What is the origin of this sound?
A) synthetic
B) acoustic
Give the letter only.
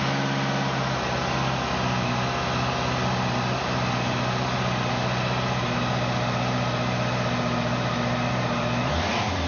B